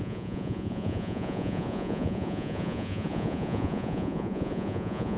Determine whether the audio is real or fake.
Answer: fake